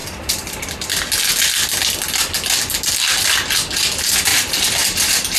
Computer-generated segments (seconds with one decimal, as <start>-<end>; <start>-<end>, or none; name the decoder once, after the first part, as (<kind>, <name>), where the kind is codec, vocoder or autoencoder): 0.0-0.6 (vocoder, BigVGAN v2); 4.3-5.4